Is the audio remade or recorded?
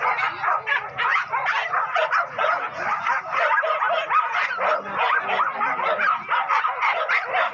recorded